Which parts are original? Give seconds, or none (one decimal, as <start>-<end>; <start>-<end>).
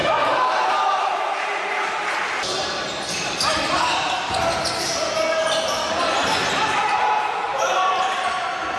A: 4.3-7.4